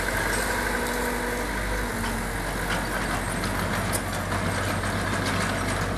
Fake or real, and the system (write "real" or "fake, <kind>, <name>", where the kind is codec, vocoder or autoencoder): real